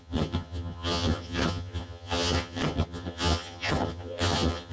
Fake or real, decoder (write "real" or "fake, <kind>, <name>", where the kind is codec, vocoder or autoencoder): fake, vocoder, HiFi-GAN